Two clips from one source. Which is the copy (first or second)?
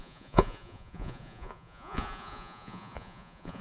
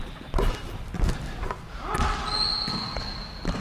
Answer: first